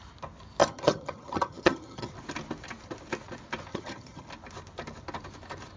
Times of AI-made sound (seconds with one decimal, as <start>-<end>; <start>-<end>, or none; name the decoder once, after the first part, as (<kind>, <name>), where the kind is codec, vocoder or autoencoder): 0.6-2.1 (vocoder, HiFi-GAN); 3.7-4.3